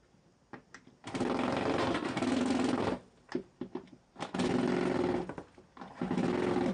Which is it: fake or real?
real